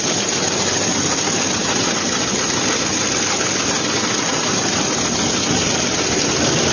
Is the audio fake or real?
real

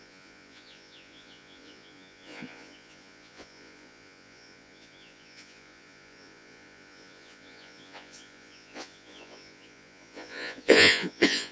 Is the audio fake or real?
fake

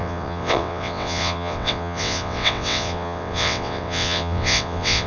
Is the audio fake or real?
fake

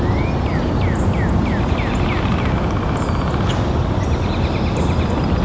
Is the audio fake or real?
real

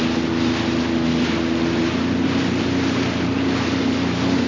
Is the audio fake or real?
real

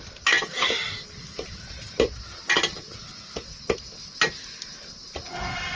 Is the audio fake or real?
real